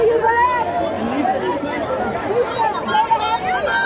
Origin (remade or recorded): recorded